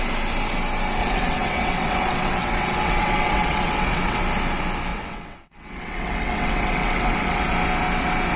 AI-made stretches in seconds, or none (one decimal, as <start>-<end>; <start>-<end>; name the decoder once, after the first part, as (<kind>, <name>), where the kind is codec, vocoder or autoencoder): 1.0-4.2 (vocoder, WaveNeXt); 4.9-7.4